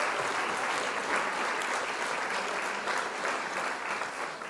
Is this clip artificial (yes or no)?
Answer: no